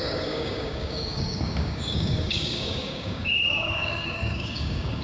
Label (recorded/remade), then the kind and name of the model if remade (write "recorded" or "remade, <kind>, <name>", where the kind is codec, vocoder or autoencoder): remade, codec, DAC